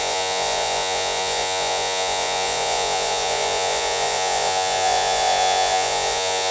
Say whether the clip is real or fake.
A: fake